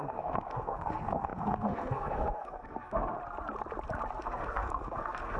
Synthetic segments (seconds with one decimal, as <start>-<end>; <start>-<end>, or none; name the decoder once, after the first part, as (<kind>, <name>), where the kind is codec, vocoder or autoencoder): 0.0-3.0 (codec, SNAC); 4.2-5.4